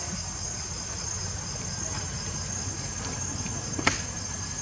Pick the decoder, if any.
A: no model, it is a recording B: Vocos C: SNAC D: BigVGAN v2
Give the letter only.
A